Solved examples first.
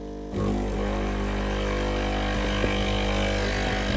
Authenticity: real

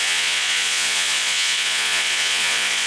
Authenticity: fake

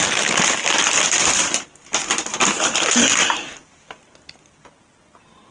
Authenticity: real